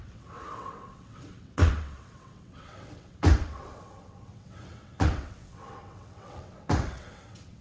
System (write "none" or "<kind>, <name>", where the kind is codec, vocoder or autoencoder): vocoder, WaveNeXt